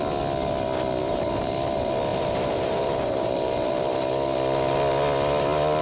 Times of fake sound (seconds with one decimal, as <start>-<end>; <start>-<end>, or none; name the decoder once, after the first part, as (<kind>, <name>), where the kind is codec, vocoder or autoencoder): 1.0-1.5 (vocoder, BigVGAN v2); 2.1-3.7